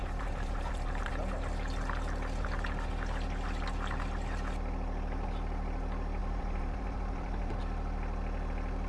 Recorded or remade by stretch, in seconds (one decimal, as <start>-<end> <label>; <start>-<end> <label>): 0.0-1.1 remade; 1.1-6.2 recorded; 6.2-7.5 remade; 7.5-8.9 recorded